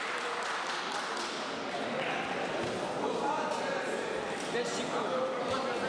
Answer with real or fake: fake